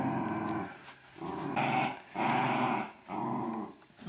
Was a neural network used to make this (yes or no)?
no